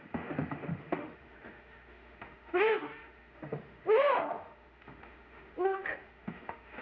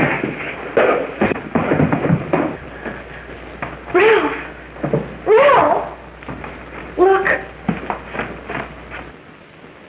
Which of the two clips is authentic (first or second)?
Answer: second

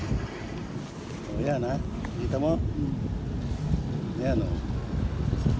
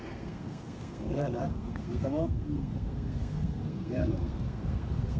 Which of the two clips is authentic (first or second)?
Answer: first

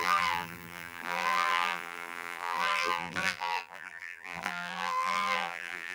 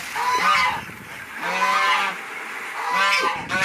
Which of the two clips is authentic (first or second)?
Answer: second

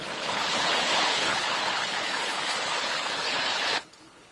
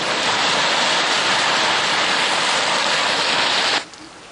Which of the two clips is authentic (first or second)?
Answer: second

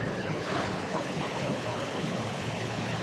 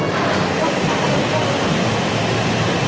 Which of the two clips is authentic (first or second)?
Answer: second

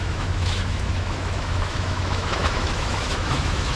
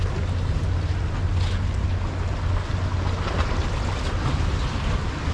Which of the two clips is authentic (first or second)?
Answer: second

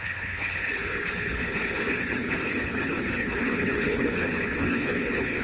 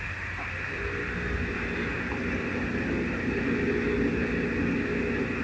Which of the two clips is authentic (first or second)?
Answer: second